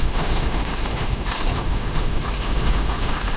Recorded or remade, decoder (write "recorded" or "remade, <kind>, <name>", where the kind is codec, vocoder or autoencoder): remade, autoencoder, DAC-VAE